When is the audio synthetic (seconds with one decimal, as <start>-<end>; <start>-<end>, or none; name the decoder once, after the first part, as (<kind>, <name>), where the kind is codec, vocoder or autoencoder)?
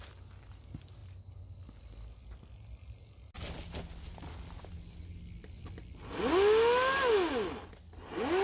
none